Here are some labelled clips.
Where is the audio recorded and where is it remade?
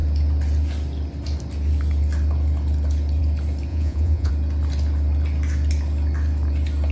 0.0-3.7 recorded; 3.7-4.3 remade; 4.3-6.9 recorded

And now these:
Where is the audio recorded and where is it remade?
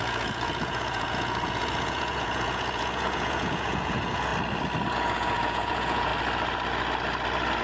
0.0-4.3 remade; 4.3-4.9 recorded; 4.9-6.1 remade; 6.1-7.6 recorded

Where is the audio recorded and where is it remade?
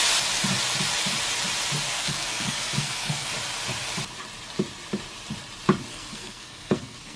0.0-1.9 recorded; 1.9-3.3 remade; 3.3-5.9 recorded; 5.9-7.2 remade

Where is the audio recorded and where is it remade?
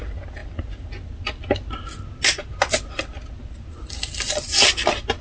0.0-5.2 recorded